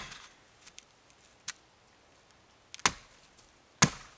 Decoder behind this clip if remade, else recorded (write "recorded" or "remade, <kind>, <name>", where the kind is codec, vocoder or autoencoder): recorded